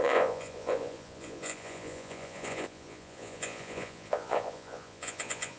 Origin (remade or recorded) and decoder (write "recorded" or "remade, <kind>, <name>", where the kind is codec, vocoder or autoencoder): remade, vocoder, Vocos